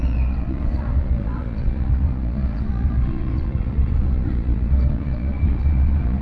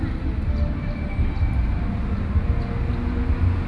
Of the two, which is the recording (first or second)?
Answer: second